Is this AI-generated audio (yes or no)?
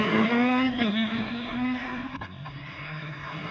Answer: yes